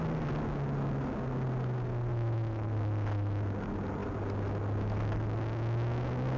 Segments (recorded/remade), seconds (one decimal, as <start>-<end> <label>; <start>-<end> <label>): 0.0-6.4 recorded